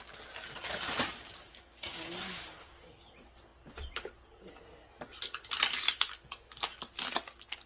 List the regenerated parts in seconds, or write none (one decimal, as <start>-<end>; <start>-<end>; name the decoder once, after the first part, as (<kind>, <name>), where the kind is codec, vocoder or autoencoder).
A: 1.5-3.1 (codec, DAC)